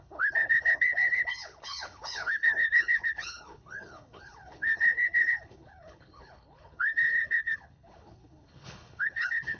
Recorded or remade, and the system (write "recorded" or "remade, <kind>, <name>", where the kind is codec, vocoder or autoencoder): remade, codec, HILCodec